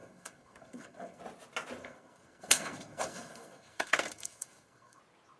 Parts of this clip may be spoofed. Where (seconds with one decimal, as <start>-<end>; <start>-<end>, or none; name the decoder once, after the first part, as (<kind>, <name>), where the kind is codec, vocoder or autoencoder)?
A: 0.0-1.2 (codec, SNAC); 1.8-5.0